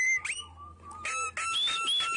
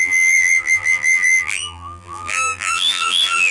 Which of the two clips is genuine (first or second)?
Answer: first